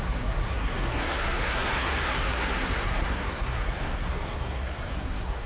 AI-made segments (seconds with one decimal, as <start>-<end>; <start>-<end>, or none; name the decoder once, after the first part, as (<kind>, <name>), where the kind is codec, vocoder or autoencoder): 0.0-5.5 (codec, SNAC)